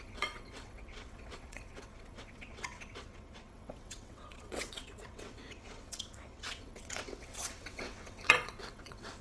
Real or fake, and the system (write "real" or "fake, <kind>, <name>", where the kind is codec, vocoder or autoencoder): fake, vocoder, WaveNeXt